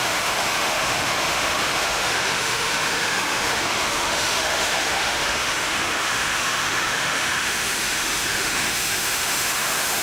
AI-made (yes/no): yes